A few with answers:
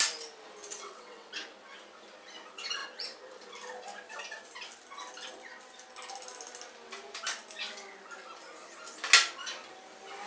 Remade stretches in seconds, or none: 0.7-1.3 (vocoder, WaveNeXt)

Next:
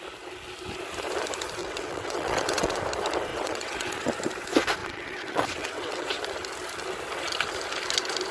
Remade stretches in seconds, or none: 1.6-2.8 (vocoder, WaveNeXt); 3.3-4.1; 4.8-6.2

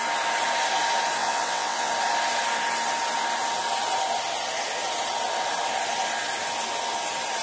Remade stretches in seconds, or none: 1.2-1.9 (vocoder, WaveNeXt)

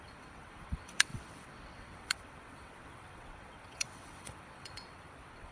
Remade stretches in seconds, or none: 0.0-5.5 (vocoder, WaveNeXt)